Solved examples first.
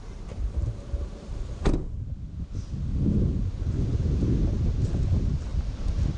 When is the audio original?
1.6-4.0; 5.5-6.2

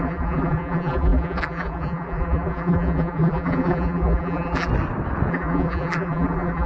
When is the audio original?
4.7-5.3

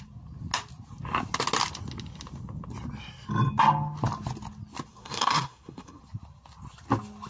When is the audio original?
0.0-4.9; 6.0-7.3

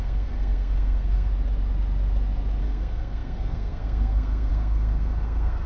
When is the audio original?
1.3-2.6

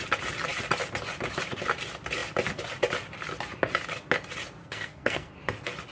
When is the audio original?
0.0-4.6; 5.3-5.9

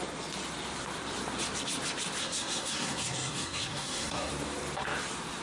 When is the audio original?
0.0-2.2; 4.3-5.4

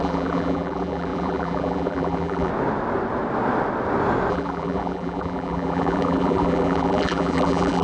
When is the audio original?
2.5-4.3

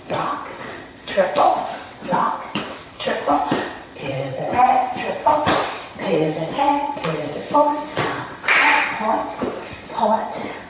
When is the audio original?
none